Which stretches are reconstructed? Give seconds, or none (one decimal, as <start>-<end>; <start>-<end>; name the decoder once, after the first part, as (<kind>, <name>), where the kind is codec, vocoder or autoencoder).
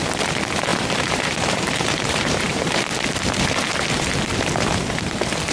0.7-2.8 (vocoder, BigVGAN v2)